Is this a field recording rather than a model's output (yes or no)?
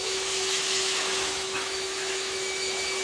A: no